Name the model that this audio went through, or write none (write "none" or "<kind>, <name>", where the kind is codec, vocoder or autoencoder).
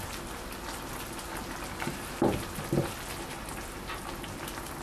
none